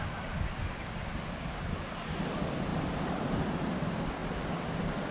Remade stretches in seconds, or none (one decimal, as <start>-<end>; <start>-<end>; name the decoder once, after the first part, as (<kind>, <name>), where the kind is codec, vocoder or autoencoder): 2.7-3.7 (vocoder, BigVGAN v2); 4.2-5.1